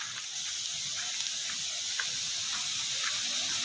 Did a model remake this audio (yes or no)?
no